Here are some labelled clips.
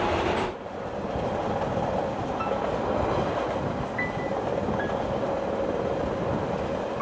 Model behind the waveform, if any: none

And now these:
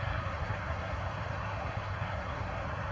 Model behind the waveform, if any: codec, SNAC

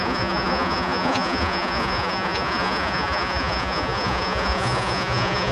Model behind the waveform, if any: vocoder, Vocos